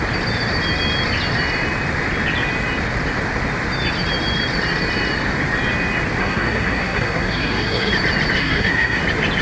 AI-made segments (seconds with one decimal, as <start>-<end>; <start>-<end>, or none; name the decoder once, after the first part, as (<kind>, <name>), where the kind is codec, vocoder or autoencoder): 6.2-7.9 (codec, SNAC); 8.4-9.0